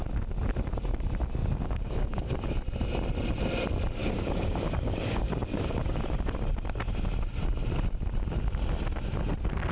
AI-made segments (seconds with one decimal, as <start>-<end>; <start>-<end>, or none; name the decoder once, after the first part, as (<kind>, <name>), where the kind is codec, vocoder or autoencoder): 1.4-2.3 (codec, DAC); 4.0-6.0